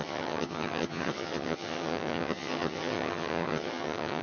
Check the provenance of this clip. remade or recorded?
remade